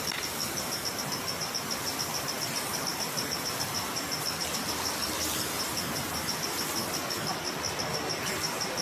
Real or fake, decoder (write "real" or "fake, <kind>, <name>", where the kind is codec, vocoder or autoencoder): real